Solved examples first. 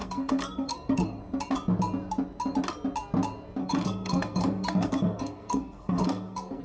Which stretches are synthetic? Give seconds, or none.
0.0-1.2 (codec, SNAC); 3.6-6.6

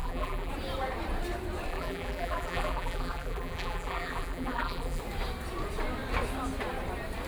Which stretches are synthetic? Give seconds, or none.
0.0-0.5 (vocoder, BigVGAN v2); 1.7-5.0

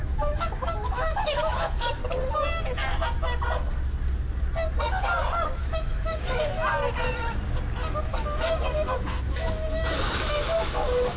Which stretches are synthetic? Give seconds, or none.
0.0-2.0 (autoencoder, DAC-VAE); 5.6-6.6; 8.1-11.2

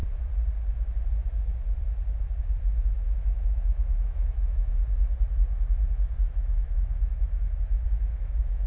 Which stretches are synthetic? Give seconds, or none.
2.6-4.7 (autoencoder, DAC-VAE); 6.3-8.7

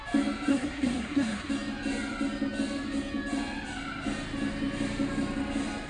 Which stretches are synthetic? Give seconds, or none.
0.5-1.5 (codec, SNAC)

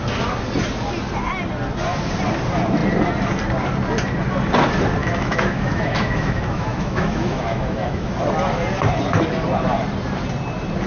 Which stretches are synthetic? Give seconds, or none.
5.0-8.1 (autoencoder, DAC-VAE)